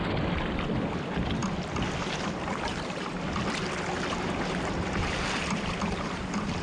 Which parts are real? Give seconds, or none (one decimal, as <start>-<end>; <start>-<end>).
0.0-6.6